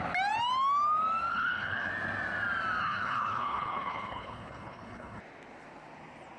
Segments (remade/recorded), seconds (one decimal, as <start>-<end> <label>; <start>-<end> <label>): 0.0-1.3 recorded; 1.3-1.9 remade; 1.9-2.8 recorded; 2.8-5.2 remade; 5.2-6.4 recorded